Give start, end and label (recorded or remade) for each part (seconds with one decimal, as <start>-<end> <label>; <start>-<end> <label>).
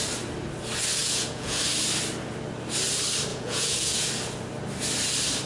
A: 0.0-1.0 recorded; 1.0-1.6 remade; 1.6-3.3 recorded; 3.3-4.1 remade; 4.1-5.5 recorded